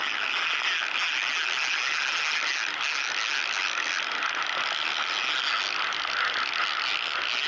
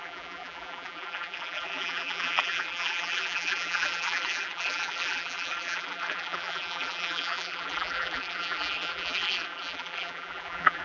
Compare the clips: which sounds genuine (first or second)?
first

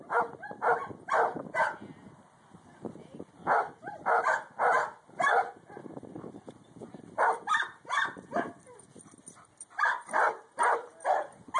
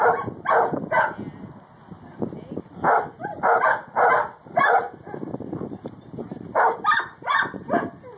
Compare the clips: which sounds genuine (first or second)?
second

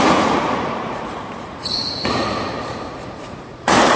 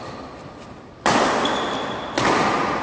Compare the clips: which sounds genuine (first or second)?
second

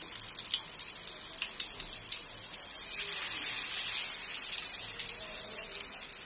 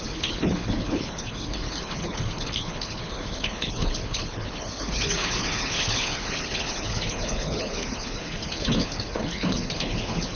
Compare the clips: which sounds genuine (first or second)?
first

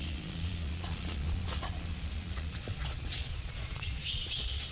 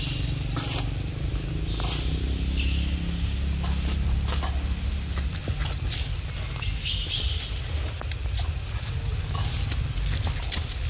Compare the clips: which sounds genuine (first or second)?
second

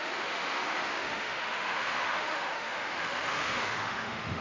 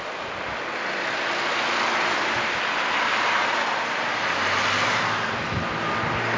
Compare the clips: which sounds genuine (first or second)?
second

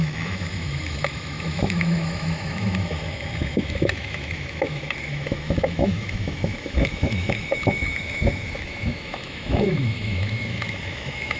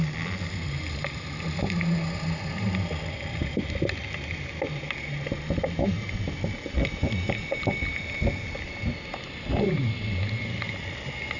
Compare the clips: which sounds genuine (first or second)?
second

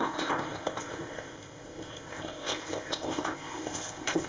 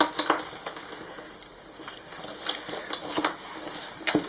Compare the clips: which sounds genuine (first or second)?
second